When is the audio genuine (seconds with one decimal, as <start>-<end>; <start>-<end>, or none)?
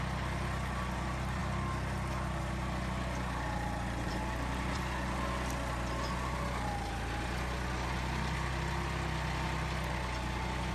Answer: 0.0-10.7